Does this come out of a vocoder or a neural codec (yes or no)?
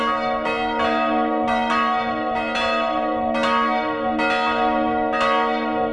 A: no